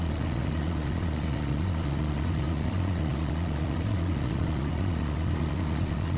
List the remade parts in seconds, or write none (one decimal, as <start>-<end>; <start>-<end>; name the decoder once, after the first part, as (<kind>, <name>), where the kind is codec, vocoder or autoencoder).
0.0-6.2 (vocoder, Vocos)